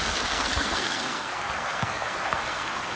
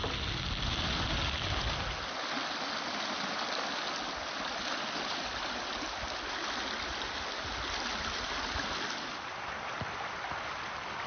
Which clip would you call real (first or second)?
second